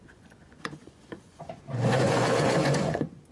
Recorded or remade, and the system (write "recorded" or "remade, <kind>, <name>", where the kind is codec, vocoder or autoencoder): remade, vocoder, Vocos